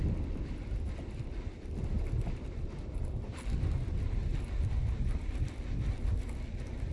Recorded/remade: recorded